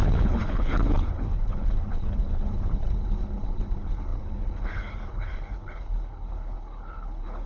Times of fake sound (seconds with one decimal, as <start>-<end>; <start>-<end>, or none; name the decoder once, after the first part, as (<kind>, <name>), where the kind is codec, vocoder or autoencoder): 0.0-7.5 (codec, HILCodec)